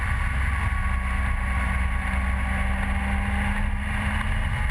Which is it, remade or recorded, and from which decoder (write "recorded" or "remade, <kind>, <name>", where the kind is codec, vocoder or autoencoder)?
recorded